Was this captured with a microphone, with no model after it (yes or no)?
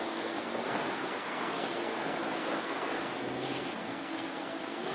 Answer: no